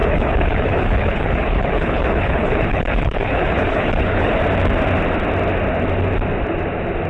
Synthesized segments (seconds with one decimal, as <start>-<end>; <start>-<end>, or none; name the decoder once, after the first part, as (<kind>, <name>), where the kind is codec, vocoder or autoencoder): 0.0-4.3 (codec, HILCodec)